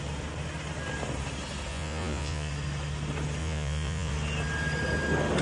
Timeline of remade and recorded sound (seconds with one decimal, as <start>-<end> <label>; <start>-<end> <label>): 0.0-1.7 recorded; 1.7-2.5 remade; 2.5-3.4 recorded; 3.4-4.1 remade; 4.1-5.4 recorded